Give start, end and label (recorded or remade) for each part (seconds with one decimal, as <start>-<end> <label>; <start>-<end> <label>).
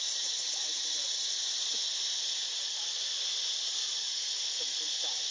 0.0-5.3 recorded